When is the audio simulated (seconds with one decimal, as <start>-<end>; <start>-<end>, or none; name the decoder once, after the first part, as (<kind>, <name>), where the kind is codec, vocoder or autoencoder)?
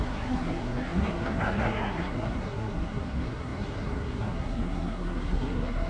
0.0-5.9 (codec, SNAC)